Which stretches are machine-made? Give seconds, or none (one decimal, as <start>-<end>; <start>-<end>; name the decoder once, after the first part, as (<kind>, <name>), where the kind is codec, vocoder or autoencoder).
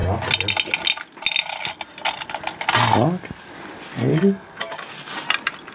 4.1-4.9 (codec, DAC)